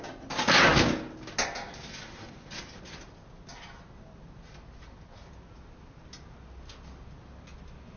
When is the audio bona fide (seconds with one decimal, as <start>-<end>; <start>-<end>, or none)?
0.0-8.0